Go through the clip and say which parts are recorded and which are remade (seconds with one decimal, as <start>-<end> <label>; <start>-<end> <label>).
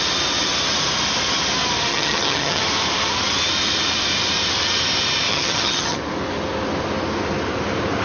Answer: 0.0-1.9 recorded; 1.9-2.6 remade; 2.6-5.3 recorded; 5.3-6.0 remade; 6.0-8.0 recorded